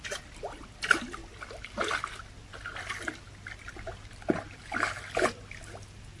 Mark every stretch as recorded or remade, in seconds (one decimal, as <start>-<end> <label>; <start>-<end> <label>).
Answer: 0.0-6.2 recorded